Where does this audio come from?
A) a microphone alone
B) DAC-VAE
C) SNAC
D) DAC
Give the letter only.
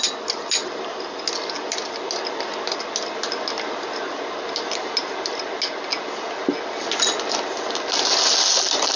A